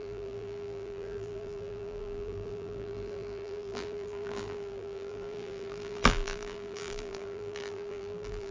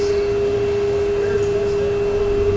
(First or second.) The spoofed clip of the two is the first